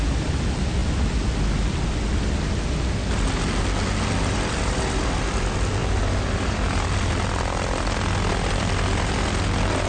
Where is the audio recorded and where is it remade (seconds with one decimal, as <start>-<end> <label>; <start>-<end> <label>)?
0.0-9.9 recorded